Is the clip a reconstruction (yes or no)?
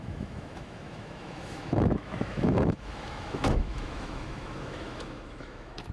yes